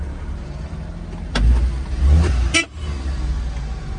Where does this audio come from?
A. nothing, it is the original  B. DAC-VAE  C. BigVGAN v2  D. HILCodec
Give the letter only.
A